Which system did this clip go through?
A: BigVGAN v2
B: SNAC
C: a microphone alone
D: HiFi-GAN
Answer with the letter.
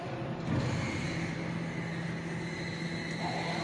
C